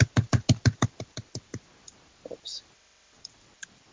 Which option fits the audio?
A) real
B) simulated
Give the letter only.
B